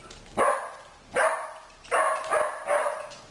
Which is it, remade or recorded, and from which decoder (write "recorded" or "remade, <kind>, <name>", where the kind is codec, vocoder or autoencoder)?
recorded